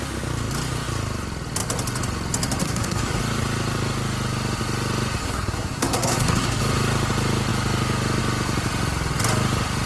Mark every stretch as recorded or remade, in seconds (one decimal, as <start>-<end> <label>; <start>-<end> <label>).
0.0-2.6 recorded; 2.6-3.2 remade; 3.2-5.2 recorded; 5.2-6.6 remade; 6.6-9.9 recorded